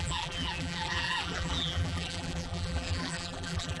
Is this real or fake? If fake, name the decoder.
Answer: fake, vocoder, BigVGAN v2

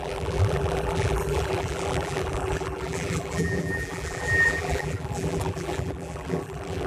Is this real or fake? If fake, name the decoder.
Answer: fake, vocoder, BigVGAN v2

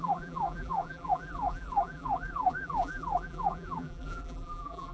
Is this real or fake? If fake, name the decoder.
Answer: fake, vocoder, BigVGAN v2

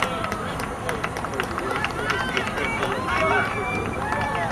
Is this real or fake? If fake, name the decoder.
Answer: fake, vocoder, BigVGAN v2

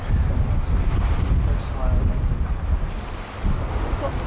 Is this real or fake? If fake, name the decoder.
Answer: real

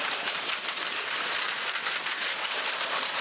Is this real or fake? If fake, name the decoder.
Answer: fake, vocoder, BigVGAN v2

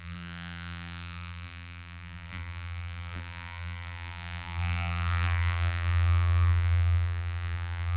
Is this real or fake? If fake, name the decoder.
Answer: fake, vocoder, BigVGAN v2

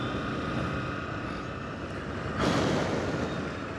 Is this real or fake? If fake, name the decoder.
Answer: real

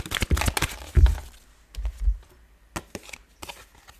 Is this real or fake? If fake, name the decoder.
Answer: real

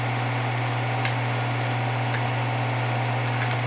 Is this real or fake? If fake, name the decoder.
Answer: real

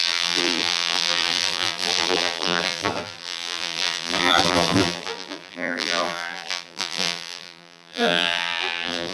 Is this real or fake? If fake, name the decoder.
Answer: fake, vocoder, BigVGAN v2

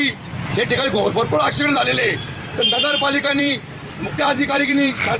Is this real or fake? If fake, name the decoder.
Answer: fake, vocoder, BigVGAN v2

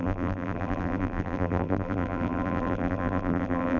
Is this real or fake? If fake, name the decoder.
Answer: fake, vocoder, BigVGAN v2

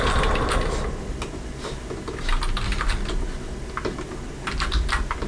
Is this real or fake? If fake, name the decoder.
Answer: real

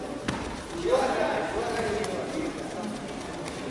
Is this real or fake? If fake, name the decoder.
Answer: fake, vocoder, BigVGAN v2